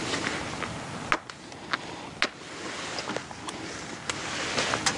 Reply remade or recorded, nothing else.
recorded